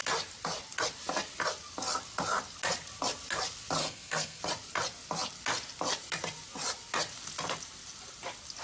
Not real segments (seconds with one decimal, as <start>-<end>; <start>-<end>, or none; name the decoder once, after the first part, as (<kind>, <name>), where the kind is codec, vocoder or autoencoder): 3.8-4.4 (codec, SNAC)